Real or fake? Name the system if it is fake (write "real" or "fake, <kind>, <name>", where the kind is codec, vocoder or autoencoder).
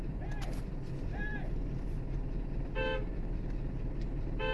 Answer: fake, vocoder, BigVGAN v2